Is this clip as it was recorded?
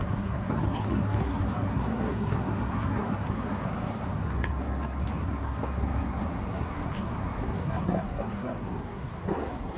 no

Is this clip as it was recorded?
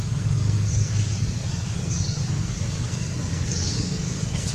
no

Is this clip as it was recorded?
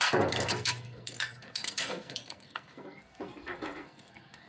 no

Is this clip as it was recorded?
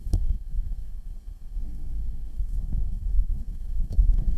no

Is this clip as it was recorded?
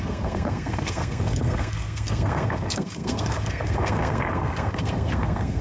no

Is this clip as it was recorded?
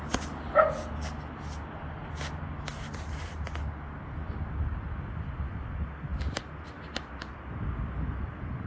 yes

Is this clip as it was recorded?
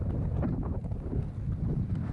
yes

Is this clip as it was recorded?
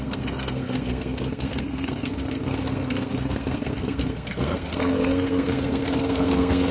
no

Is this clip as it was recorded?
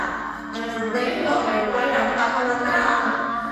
no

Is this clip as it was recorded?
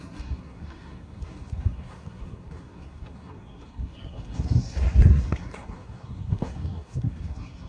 no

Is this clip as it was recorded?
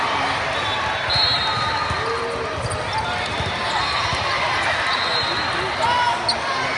yes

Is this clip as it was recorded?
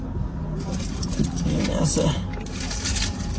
yes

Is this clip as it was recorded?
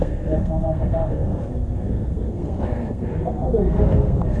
no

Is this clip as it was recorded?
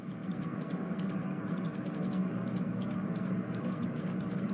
no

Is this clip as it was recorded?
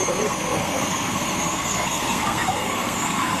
no